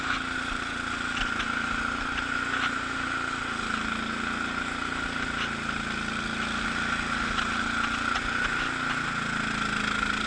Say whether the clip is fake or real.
real